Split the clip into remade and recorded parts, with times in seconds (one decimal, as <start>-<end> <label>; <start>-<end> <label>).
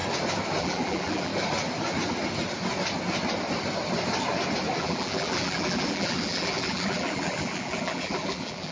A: 0.0-0.6 recorded; 0.6-1.3 remade; 1.3-4.8 recorded; 4.8-8.7 remade